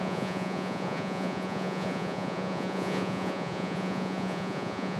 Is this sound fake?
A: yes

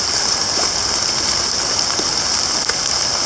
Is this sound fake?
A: no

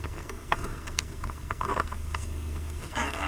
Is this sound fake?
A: yes